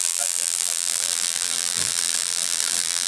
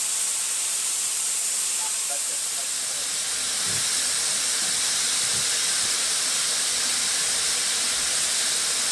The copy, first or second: first